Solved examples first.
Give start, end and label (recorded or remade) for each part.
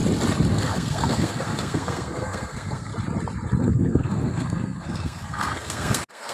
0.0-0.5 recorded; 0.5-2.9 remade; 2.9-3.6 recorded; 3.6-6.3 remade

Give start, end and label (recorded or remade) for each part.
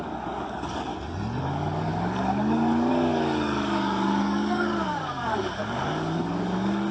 0.0-0.9 remade; 0.9-1.4 recorded; 1.4-6.9 remade